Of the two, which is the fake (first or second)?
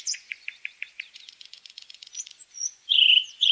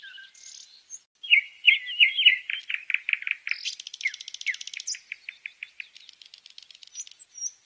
first